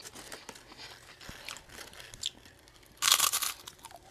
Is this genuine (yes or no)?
yes